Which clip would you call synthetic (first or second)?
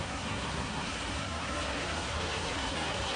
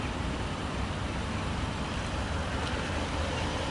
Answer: first